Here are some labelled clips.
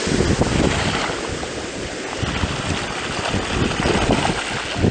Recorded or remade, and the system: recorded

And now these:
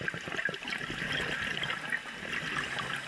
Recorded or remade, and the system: recorded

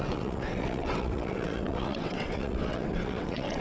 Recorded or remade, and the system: remade, vocoder, WaveNeXt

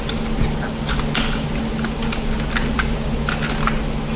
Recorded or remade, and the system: recorded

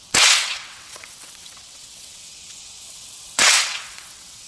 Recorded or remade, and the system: remade, vocoder, WaveNeXt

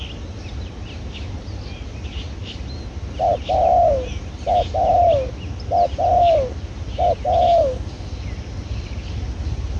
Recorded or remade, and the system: recorded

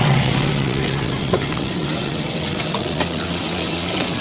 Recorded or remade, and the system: remade, vocoder, WaveNeXt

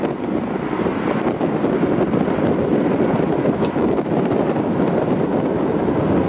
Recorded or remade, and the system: recorded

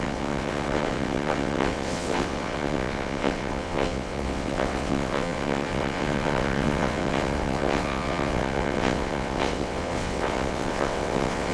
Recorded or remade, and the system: remade, vocoder, WaveNeXt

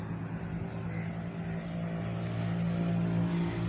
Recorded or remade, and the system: recorded